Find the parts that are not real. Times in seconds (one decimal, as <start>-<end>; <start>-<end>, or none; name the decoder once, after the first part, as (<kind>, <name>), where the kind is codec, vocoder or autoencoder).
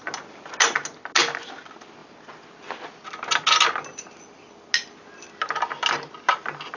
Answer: none